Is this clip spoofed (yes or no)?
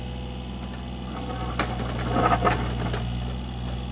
no